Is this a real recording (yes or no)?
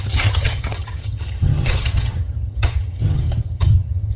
no